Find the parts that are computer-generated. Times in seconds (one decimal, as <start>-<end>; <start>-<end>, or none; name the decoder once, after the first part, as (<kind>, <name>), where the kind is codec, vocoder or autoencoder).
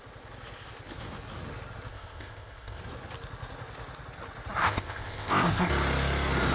1.9-2.8 (codec, ZipCodec); 4.6-5.7